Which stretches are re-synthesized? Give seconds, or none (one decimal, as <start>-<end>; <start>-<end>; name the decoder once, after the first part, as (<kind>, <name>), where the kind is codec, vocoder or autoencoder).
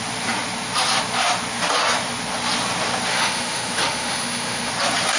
3.1-4.7 (autoencoder, DAC-VAE)